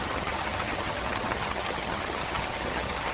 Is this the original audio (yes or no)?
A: no